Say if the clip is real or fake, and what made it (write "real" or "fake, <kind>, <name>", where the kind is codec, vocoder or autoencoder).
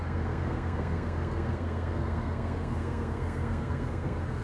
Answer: fake, codec, SNAC